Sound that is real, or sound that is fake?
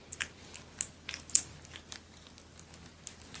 real